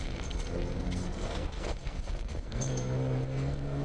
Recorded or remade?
remade